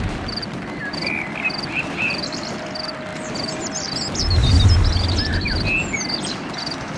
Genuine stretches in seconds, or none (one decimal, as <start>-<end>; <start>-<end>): 0.4-1.7; 4.5-6.2